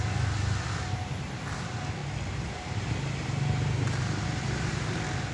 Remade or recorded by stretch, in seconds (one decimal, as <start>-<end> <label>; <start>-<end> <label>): 0.0-5.3 recorded